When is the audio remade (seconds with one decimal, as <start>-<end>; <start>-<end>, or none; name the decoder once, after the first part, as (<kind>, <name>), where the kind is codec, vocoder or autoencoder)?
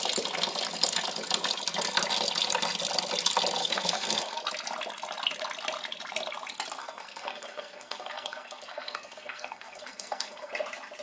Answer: 3.6-4.4 (codec, SNAC); 6.8-10.5